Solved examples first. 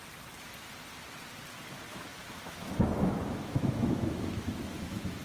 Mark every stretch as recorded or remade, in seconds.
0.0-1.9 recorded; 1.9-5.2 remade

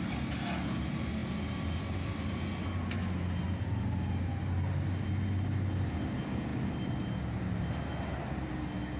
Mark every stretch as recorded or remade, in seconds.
0.0-9.0 recorded

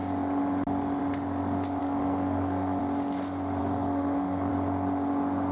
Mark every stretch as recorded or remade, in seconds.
0.0-1.8 recorded; 1.8-2.8 remade; 2.8-3.6 recorded; 3.6-4.5 remade; 4.5-5.5 recorded

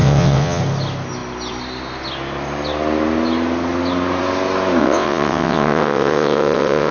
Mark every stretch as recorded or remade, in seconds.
0.0-0.6 remade; 0.6-4.8 recorded; 4.8-6.9 remade

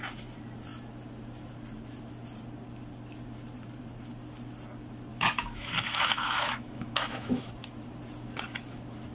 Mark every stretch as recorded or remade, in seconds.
0.0-5.1 recorded; 5.1-7.5 remade; 7.5-9.1 recorded